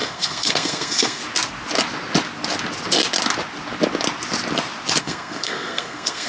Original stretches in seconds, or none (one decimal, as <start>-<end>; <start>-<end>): 1.2-5.0